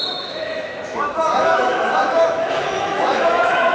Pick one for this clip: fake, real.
fake